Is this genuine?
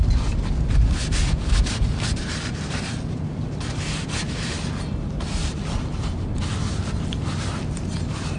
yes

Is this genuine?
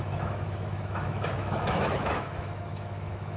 no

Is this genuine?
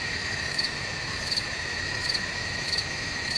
no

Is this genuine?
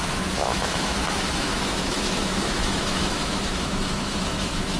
no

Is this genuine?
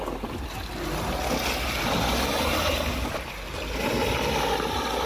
yes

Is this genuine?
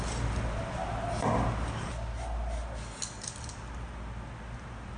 yes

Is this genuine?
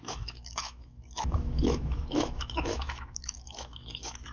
no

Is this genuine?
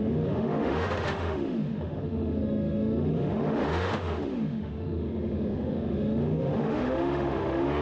no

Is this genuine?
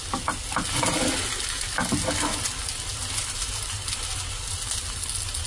yes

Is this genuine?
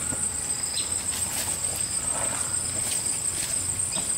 yes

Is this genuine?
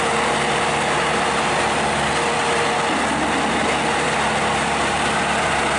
yes